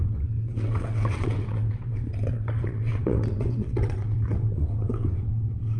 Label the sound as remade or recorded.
remade